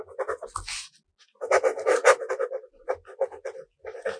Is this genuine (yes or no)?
yes